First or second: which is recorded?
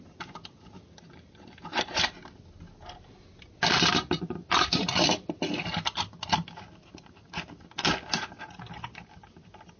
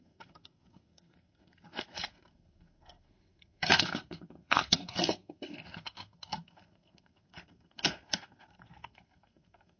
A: first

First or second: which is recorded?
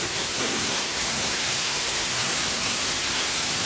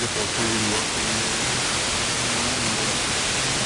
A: second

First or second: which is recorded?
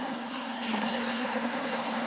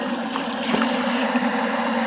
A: second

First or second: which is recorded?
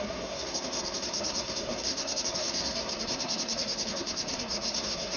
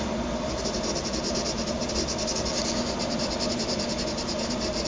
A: second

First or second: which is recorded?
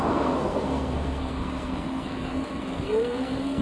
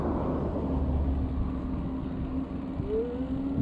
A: second